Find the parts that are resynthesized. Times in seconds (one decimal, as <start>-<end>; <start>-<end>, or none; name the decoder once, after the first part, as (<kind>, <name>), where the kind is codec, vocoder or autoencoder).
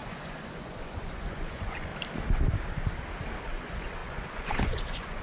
0.0-1.9 (vocoder, Vocos); 3.4-5.2